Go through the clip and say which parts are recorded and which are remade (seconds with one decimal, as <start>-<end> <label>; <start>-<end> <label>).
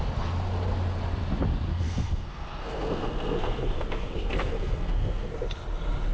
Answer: 0.0-1.7 recorded; 1.7-5.3 remade; 5.3-6.1 recorded